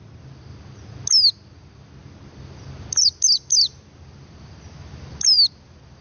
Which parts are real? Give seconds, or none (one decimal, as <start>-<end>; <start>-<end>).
0.0-6.0